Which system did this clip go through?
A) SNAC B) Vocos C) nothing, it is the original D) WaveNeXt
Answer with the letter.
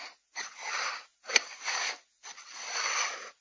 C